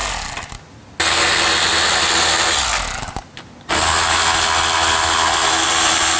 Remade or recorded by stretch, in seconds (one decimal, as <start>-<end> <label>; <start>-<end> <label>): 0.0-6.2 recorded